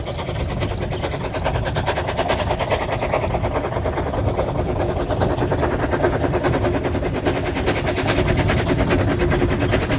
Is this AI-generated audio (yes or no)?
no